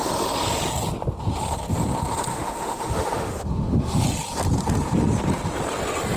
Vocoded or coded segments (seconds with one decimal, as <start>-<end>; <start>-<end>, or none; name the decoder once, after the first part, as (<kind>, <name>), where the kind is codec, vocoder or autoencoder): 2.3-4.0 (autoencoder, DAC-VAE)